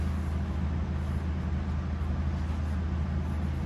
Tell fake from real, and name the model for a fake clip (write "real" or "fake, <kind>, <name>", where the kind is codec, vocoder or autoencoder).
real